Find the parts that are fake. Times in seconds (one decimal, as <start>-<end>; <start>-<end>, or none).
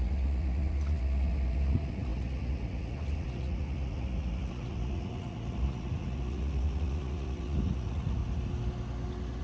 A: 0.0-8.2